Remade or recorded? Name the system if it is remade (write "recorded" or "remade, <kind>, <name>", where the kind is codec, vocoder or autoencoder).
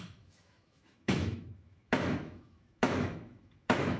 remade, autoencoder, DAC-VAE